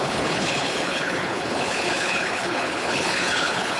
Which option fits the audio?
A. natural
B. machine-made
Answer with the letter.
B